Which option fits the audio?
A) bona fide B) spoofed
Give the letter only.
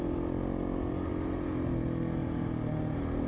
A